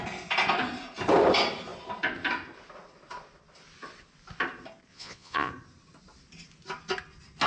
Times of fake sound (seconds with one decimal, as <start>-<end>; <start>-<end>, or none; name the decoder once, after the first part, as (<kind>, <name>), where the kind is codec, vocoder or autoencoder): 4.9-5.5 (vocoder, Vocos)